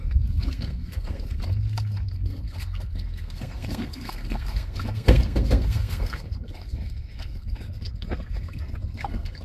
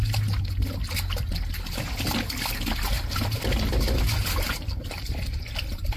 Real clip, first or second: second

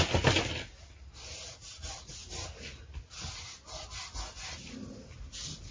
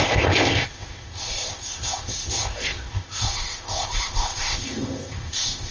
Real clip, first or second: first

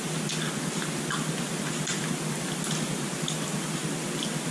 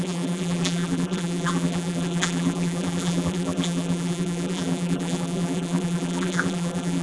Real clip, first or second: first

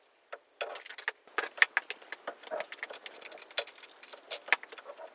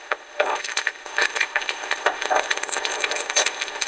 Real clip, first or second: first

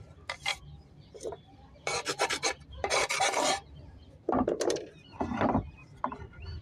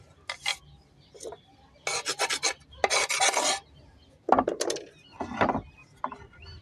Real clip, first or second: second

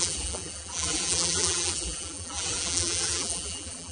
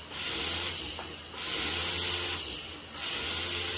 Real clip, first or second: second